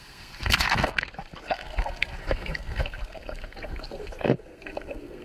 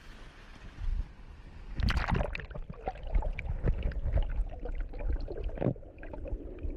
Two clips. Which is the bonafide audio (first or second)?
second